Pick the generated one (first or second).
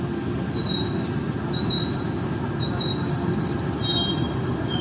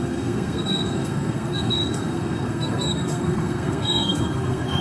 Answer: second